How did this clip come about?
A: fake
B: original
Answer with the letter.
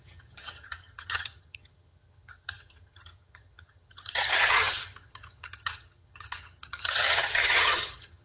A